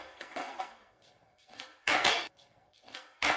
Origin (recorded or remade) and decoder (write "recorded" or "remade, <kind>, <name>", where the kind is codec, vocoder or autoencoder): remade, codec, SNAC